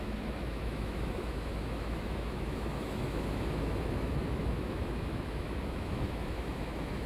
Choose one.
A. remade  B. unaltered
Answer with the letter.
A